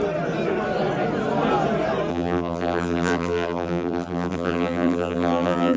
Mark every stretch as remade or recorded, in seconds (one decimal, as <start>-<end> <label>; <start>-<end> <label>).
0.0-2.1 recorded; 2.1-5.8 remade